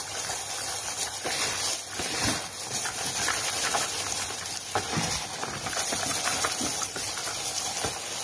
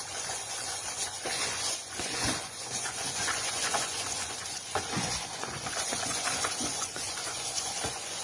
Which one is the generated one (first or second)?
second